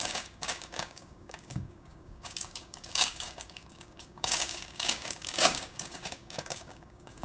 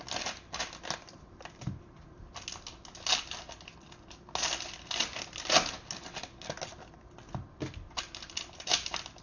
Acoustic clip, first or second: second